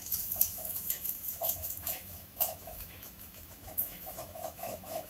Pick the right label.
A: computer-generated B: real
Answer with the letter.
A